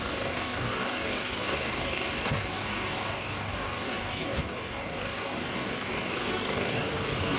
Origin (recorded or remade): remade